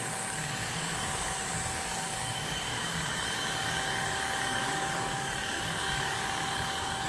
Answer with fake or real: fake